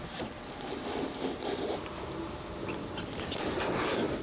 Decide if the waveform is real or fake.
fake